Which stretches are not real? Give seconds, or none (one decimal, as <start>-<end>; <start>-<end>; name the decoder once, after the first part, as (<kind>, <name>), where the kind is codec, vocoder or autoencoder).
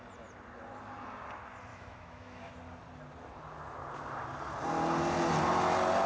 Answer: 1.7-2.5 (autoencoder, DAC-VAE)